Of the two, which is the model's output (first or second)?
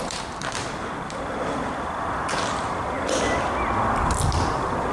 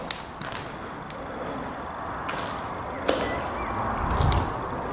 first